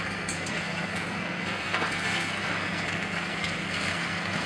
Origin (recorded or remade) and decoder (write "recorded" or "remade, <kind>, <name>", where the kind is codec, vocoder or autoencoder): remade, codec, SNAC